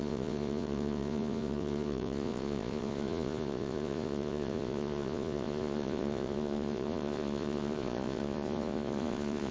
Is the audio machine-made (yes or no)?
yes